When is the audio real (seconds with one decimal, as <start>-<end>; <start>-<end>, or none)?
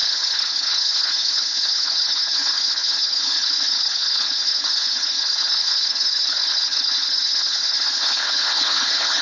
none